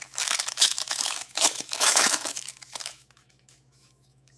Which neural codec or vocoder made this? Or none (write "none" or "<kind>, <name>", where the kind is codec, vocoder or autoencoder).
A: autoencoder, DAC-VAE